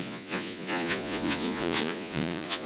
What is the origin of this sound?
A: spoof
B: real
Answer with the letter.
A